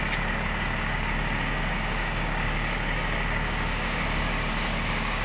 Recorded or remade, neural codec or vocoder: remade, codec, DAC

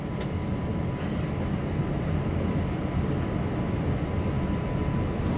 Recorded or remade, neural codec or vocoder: recorded